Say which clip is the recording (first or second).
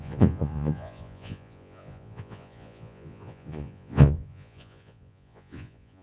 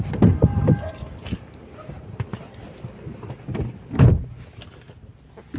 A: second